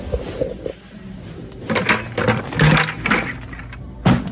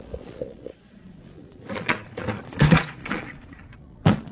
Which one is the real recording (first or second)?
first